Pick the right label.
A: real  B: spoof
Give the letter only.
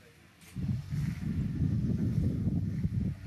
A